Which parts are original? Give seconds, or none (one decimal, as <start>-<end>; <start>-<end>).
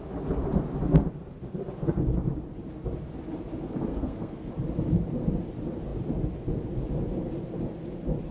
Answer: 0.0-3.9; 4.5-8.3